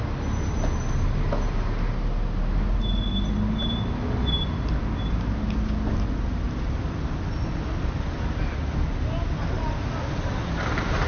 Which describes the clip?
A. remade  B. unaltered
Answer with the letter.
B